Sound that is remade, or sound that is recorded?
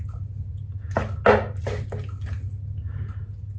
recorded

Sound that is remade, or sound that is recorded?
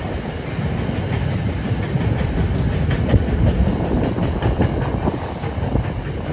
recorded